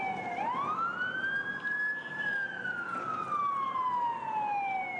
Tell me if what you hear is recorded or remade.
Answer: recorded